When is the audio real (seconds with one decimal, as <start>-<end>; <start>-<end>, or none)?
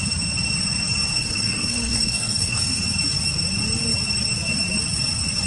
0.0-1.1; 2.6-5.5